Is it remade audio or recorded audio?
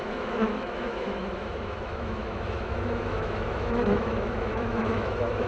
remade